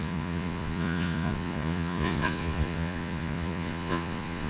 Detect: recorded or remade remade